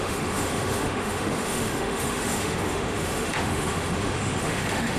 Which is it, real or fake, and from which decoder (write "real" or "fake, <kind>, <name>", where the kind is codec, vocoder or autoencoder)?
fake, autoencoder, DAC-VAE